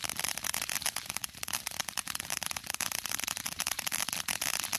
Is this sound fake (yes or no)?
yes